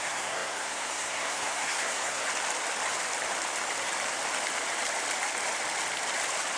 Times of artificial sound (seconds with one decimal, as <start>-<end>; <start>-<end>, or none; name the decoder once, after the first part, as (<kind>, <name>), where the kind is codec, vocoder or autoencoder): 0.0-2.2 (codec, SNAC)